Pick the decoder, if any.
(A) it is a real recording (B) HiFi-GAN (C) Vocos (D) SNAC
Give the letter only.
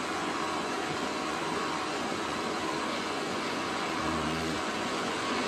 C